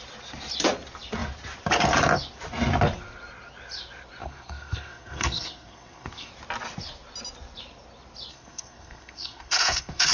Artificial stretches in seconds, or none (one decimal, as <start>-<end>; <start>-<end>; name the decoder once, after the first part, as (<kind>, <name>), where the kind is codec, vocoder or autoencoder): 4.2-6.3 (codec, SNAC); 8.3-10.1